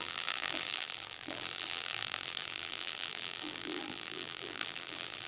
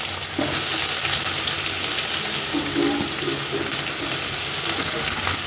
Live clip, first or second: second